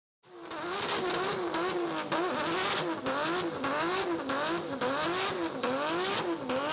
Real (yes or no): yes